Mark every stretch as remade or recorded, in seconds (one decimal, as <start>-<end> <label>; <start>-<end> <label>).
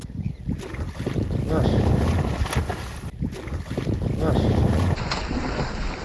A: 0.0-4.7 recorded; 4.7-5.2 remade; 5.2-6.0 recorded